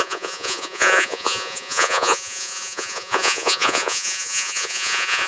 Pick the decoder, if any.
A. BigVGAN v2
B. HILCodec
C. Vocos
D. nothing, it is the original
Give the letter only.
C